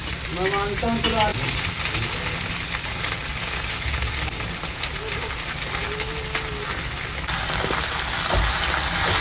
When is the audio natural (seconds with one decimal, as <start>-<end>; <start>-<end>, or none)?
0.0-1.3; 1.8-9.2